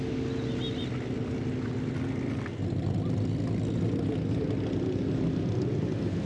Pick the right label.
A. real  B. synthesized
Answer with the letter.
A